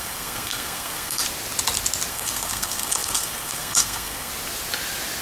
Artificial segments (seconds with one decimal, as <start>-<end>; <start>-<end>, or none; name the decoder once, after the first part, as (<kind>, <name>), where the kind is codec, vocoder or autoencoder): 0.0-1.2 (codec, SNAC); 2.1-4.3